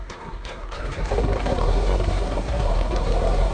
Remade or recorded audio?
remade